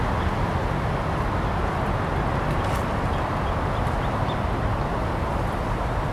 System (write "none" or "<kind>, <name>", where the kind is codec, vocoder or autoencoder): none